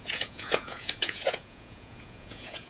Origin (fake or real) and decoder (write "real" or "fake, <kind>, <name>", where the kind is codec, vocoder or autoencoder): fake, vocoder, Vocos